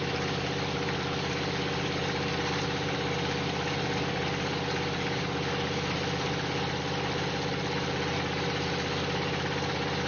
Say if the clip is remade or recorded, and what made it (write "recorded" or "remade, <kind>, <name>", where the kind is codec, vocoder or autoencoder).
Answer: recorded